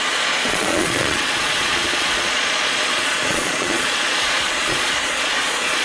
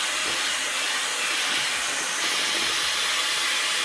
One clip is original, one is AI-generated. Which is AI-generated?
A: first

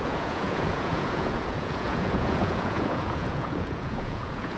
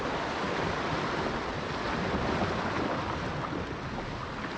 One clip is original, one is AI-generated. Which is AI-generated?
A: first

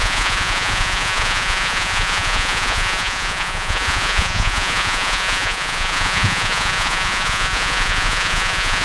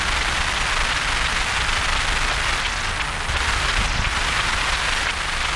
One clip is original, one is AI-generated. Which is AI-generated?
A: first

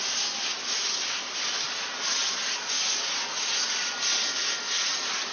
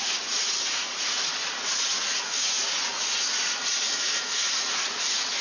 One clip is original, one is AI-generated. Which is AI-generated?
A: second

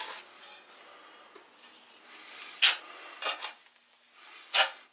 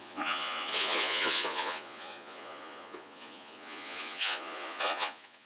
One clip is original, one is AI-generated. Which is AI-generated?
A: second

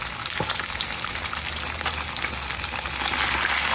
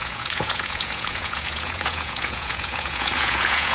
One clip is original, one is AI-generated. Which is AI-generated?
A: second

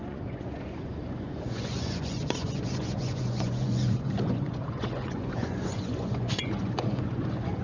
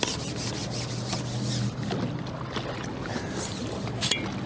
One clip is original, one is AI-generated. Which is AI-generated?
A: first